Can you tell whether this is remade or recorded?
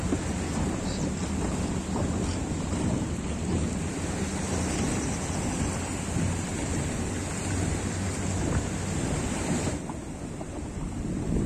recorded